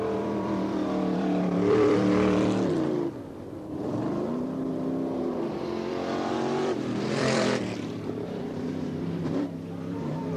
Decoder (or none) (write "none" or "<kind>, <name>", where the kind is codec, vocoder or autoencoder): vocoder, BigVGAN v2